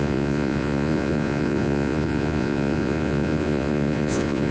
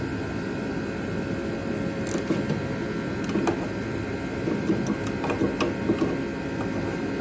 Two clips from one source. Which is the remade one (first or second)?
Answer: first